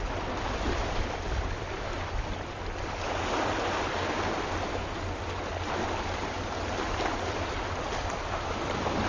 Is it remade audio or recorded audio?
recorded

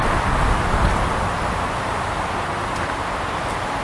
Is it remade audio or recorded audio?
recorded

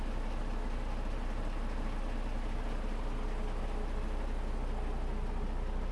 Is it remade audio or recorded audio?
recorded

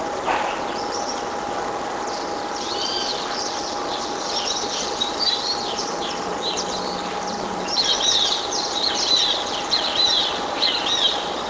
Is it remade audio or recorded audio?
recorded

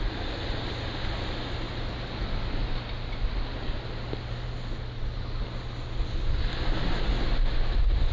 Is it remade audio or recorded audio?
recorded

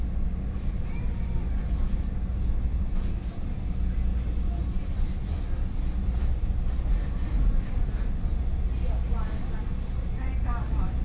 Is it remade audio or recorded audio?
recorded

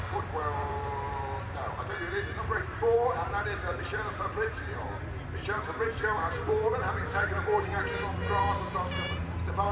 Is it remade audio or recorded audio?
remade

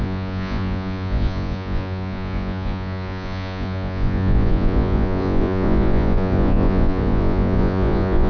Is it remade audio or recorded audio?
remade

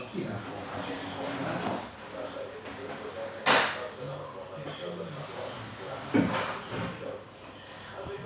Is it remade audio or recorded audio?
recorded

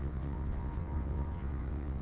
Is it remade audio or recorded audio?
remade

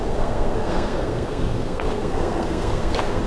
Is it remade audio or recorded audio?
remade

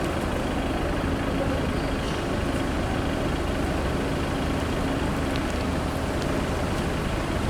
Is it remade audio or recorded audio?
recorded